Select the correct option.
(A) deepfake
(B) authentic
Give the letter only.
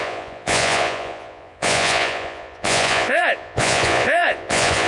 A